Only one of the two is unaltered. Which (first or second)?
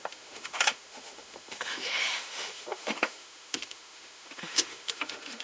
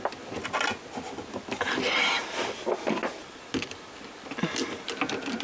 second